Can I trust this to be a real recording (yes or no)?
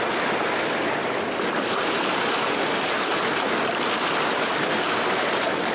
yes